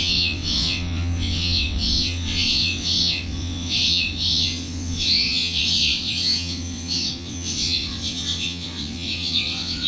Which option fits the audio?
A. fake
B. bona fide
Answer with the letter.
A